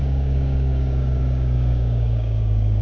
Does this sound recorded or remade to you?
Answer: remade